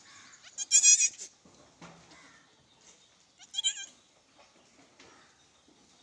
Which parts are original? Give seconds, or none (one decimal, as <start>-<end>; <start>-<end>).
0.0-6.0